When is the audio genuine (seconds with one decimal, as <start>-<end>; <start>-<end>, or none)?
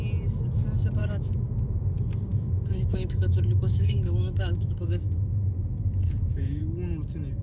0.0-1.0; 1.6-2.3; 6.6-7.4